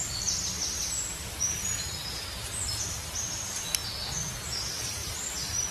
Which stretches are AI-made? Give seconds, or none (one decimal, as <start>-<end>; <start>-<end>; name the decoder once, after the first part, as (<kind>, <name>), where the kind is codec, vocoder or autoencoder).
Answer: none